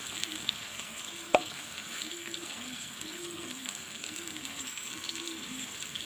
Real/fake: fake